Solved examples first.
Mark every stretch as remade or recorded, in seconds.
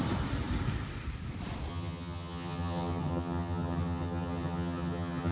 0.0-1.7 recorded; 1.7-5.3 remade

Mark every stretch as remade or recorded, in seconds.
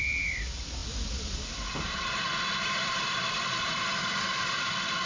0.0-5.0 remade